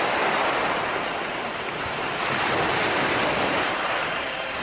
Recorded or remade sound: recorded